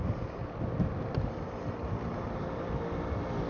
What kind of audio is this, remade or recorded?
recorded